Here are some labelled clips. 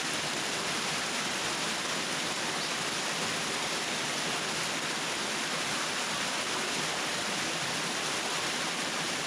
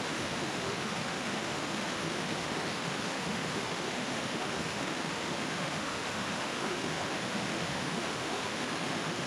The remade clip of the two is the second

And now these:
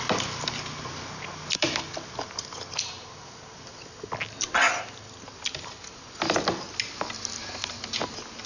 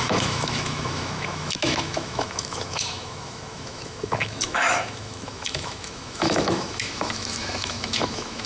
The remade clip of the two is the second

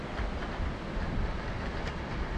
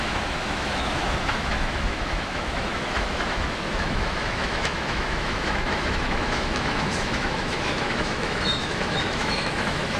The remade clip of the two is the second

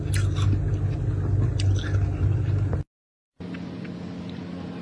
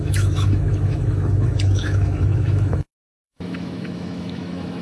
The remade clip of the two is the second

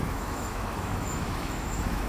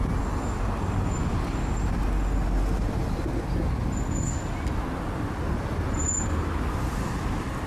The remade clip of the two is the first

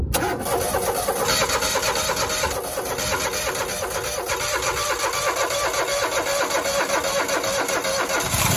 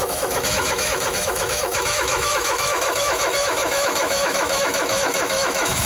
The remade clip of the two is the second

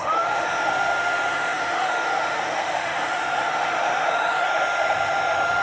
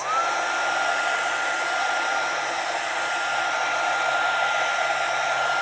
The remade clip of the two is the first